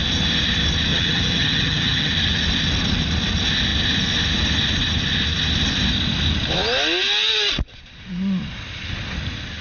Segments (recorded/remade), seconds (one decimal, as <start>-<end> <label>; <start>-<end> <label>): 0.0-0.9 recorded; 0.9-2.1 remade; 2.1-9.6 recorded